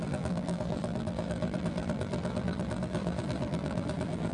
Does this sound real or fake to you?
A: fake